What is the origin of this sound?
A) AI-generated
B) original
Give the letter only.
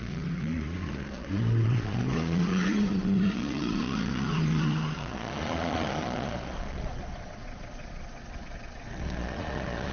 A